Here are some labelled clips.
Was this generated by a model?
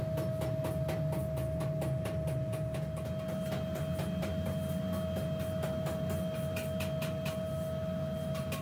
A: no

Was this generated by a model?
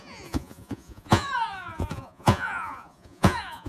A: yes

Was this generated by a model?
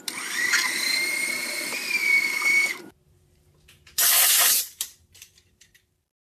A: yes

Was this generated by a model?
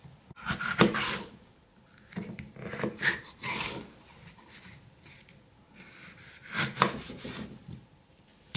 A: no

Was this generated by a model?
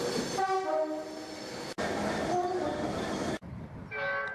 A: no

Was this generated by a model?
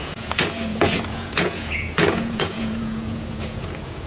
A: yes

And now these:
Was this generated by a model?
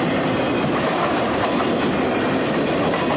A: no